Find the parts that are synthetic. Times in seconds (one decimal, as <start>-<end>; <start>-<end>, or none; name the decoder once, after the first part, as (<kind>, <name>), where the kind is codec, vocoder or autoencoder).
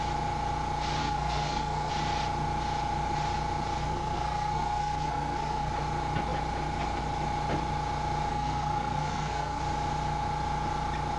1.0-1.9 (codec, SNAC); 3.8-5.7; 8.3-9.6